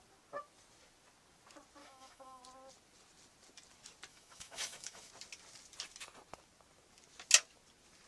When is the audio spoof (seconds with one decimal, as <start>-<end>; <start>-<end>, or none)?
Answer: 1.8-2.4; 4.1-5.1